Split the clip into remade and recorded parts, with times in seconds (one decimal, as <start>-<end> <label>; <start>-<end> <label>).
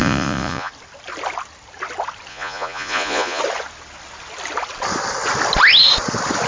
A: 0.0-0.7 remade; 0.7-2.3 recorded; 2.3-3.4 remade; 3.4-6.5 recorded